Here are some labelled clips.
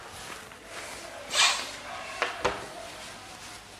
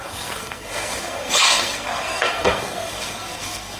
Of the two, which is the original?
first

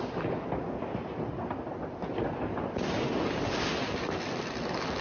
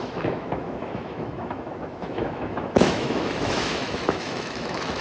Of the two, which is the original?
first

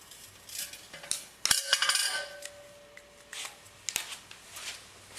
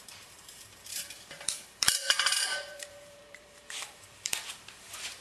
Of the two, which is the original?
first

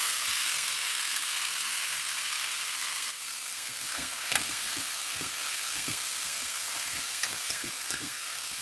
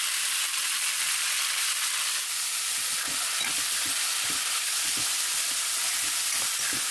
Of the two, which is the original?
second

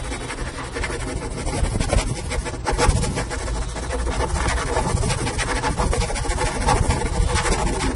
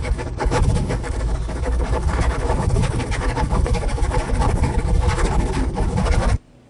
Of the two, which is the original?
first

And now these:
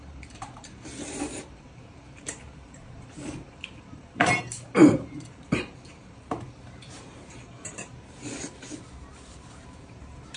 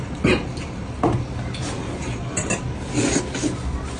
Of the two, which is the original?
second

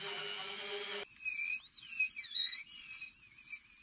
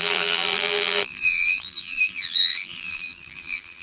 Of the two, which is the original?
first